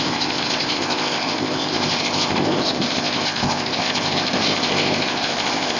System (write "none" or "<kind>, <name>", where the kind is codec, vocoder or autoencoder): codec, ZipCodec